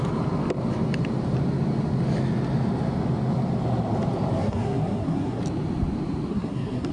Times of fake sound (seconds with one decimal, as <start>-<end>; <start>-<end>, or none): 4.4-5.4; 6.3-6.9